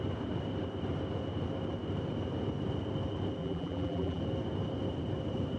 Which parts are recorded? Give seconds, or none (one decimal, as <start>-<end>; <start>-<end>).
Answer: 0.0-3.4; 4.2-5.6